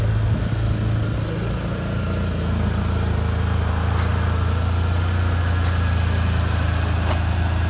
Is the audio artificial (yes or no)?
no